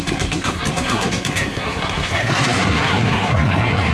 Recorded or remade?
remade